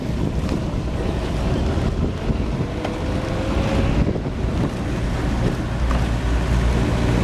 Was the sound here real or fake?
real